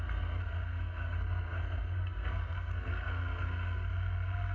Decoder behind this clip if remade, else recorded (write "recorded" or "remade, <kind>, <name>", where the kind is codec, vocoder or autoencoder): remade, codec, SNAC